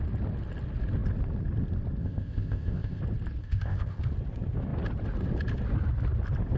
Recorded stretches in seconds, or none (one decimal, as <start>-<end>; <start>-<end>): 0.0-2.0; 3.0-3.4; 4.0-6.6